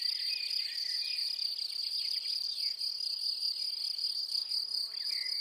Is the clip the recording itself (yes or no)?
yes